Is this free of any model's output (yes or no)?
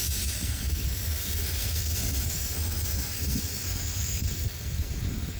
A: no